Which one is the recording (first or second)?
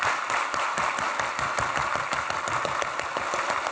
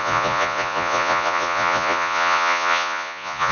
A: first